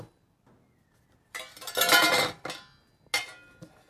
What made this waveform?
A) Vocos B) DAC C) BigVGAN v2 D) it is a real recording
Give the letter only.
D